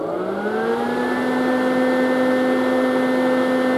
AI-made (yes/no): no